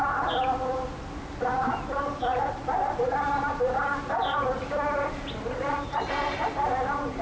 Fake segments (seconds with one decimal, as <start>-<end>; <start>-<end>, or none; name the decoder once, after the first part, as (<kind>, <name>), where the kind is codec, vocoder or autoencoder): none

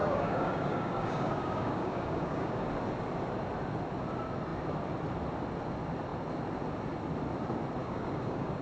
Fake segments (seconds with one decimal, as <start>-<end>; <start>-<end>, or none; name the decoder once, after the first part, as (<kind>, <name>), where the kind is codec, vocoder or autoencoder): 0.0-2.7 (codec, DAC); 7.8-8.6

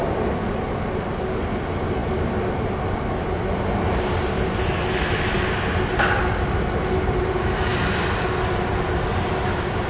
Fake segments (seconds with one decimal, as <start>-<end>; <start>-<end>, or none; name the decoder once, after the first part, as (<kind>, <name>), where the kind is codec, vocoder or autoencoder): none

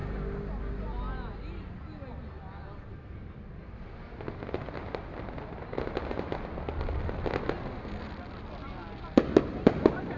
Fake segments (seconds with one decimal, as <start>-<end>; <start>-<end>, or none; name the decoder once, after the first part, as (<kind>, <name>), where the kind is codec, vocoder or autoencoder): none

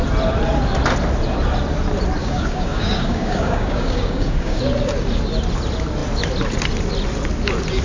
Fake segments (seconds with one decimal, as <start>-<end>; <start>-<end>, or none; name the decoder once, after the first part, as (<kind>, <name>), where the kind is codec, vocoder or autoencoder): 2.2-4.6 (codec, DAC)

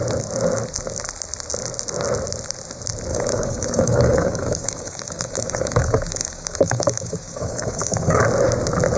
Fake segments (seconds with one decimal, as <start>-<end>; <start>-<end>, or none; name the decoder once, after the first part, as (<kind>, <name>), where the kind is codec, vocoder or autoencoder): 3.1-8.2 (codec, DAC)

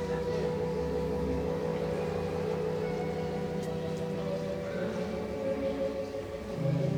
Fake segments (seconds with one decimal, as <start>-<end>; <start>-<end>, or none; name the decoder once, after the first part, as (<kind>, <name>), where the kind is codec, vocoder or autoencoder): 0.0-1.7 (codec, DAC); 5.9-7.0